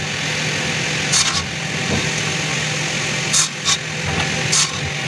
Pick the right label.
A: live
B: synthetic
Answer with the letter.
A